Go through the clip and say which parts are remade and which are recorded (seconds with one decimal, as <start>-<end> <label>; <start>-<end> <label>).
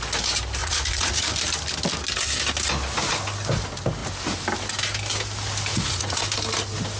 0.0-0.6 recorded; 0.6-1.1 remade; 1.1-5.7 recorded; 5.7-6.2 remade; 6.2-7.0 recorded